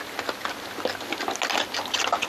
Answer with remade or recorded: recorded